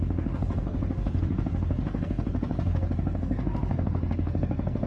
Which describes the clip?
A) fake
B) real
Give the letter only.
A